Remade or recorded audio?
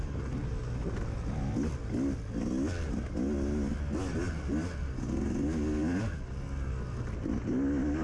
recorded